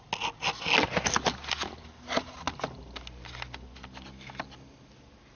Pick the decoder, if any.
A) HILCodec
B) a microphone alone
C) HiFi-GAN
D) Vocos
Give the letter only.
B